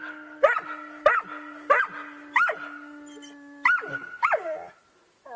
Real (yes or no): yes